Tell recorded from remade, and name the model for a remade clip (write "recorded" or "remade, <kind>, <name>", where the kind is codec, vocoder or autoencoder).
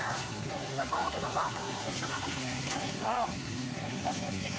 remade, codec, SNAC